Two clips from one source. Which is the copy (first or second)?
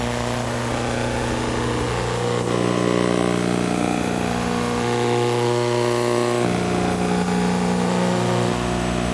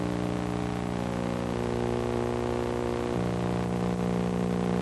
first